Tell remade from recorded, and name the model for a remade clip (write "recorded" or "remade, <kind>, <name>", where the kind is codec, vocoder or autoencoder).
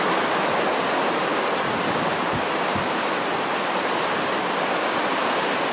recorded